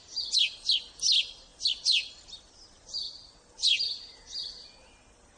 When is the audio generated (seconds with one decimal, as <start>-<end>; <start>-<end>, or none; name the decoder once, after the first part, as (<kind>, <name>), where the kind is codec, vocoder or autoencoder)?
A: none